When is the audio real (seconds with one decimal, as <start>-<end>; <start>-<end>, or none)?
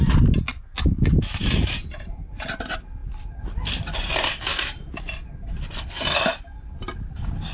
0.0-7.5